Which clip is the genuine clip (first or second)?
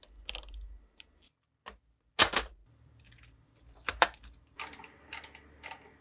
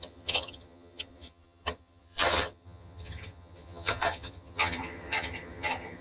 first